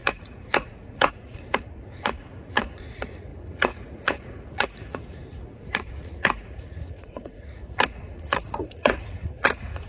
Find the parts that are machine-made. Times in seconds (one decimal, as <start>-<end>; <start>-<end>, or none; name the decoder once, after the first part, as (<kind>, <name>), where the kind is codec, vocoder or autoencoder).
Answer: 0.0-9.9 (vocoder, Vocos)